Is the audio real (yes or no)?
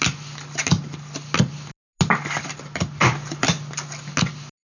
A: yes